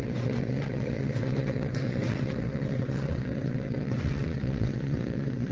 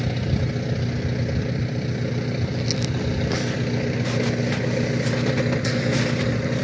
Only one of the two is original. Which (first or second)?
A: second